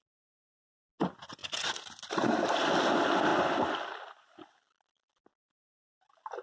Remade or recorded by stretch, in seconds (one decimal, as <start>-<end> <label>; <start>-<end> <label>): 0.0-6.4 recorded